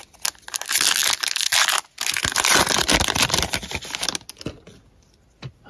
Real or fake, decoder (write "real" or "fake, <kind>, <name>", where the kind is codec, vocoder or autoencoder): real